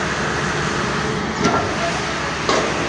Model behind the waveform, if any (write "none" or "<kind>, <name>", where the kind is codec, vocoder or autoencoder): none